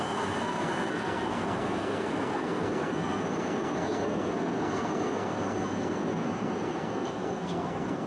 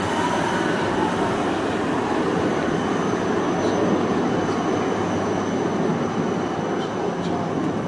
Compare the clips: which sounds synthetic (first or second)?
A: first